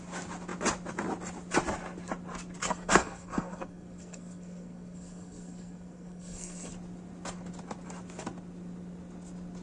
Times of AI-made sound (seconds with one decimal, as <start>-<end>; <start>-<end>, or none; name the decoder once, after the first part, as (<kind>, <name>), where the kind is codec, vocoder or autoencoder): 2.6-6.7 (codec, SNAC)